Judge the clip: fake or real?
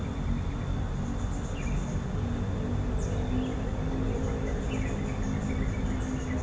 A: real